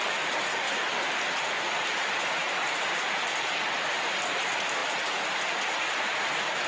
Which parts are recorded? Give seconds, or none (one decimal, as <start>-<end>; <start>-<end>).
0.0-6.7

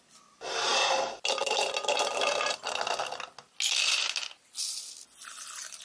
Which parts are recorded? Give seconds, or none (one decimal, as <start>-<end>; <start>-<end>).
0.0-5.8

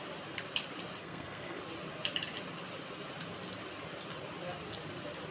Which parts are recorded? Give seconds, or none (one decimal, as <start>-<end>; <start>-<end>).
0.0-1.0; 1.6-5.3

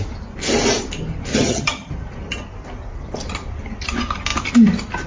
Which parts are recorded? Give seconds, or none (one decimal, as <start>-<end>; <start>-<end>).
0.0-1.3; 1.9-5.1

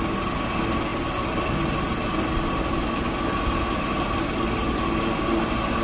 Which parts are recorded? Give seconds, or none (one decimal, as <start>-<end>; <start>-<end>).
0.0-5.8

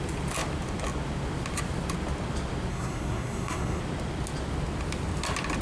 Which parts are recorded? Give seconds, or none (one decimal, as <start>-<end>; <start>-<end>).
0.0-2.7; 3.8-5.6

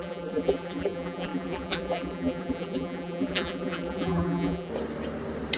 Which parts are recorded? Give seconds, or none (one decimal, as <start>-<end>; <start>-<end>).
4.7-5.6